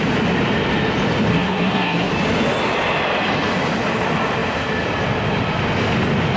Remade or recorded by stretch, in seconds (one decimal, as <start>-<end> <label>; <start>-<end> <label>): 0.0-1.3 recorded; 1.3-2.1 remade; 2.1-6.4 recorded

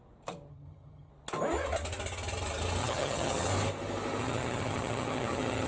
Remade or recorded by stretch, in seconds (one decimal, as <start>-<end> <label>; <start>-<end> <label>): 0.0-0.5 recorded; 0.5-1.1 remade; 1.1-2.8 recorded; 2.8-3.5 remade; 3.5-4.2 recorded; 4.2-5.7 remade

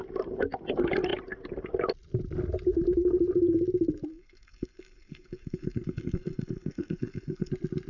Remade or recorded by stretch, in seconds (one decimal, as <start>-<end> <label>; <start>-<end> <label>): 0.0-4.1 recorded; 4.1-7.5 remade; 7.5-7.9 recorded

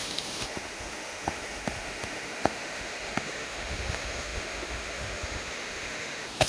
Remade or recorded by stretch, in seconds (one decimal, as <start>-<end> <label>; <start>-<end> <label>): 0.0-6.5 remade